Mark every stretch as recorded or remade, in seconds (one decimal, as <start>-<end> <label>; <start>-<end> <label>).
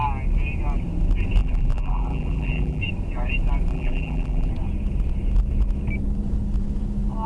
0.0-1.4 recorded; 1.4-2.8 remade; 2.8-3.7 recorded; 3.7-4.5 remade; 4.5-7.3 recorded